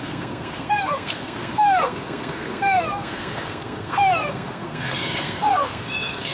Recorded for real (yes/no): no